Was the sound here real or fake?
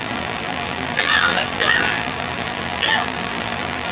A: fake